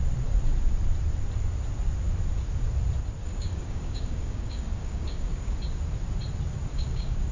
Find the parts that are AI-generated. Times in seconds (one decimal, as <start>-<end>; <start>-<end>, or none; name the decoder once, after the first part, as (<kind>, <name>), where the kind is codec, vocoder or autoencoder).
3.2-5.6 (codec, DAC); 6.7-7.3